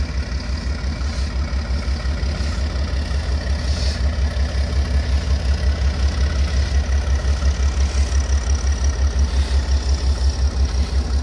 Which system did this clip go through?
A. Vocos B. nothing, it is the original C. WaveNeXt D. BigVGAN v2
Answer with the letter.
B